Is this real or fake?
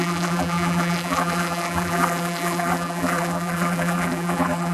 fake